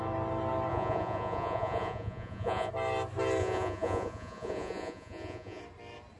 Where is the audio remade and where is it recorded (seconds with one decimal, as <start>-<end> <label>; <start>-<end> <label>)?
0.0-0.7 recorded; 0.7-2.7 remade; 2.7-3.4 recorded; 3.4-5.6 remade; 5.6-6.2 recorded